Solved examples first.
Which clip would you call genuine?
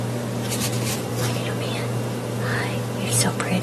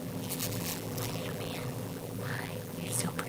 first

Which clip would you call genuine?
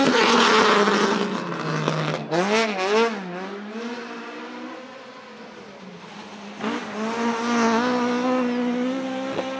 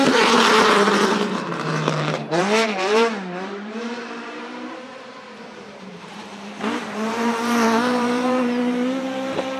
first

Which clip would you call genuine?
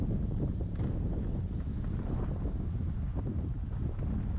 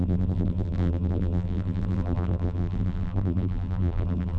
first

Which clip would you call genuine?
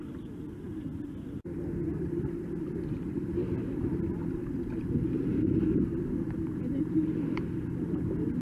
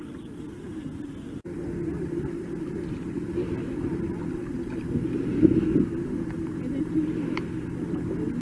second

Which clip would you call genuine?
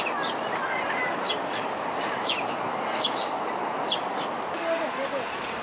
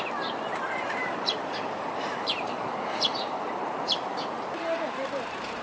first